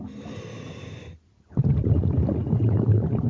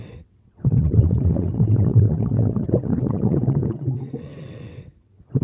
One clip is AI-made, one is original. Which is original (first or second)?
first